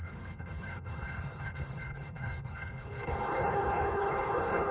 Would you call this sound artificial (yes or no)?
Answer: yes